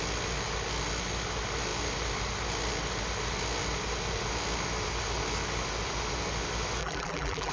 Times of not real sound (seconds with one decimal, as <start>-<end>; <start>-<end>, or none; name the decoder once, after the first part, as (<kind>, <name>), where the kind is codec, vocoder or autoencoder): 6.8-7.5 (vocoder, BigVGAN v2)